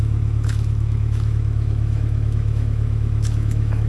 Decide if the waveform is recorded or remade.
remade